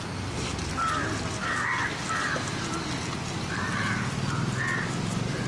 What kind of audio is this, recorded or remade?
recorded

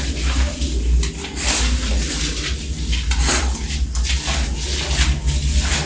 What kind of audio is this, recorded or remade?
recorded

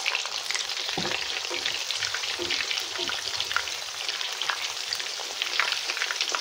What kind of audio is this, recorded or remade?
remade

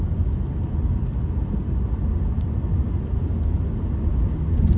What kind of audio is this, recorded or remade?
recorded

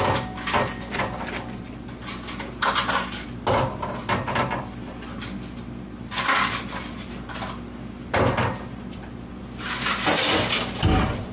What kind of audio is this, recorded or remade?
recorded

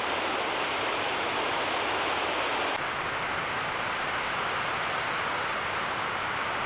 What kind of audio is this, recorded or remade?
remade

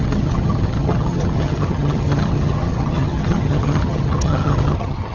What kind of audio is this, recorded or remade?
remade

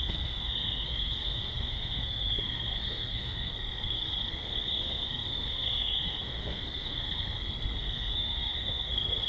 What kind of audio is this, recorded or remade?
remade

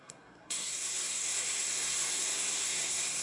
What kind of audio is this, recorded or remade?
remade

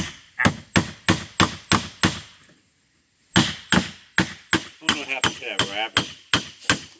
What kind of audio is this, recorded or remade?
recorded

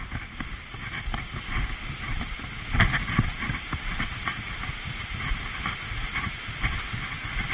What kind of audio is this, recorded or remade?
recorded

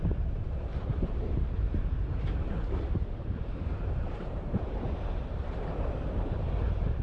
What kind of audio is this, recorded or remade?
remade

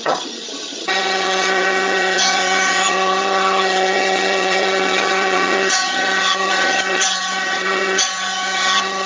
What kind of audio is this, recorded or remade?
remade